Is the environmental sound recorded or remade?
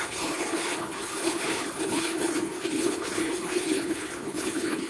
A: remade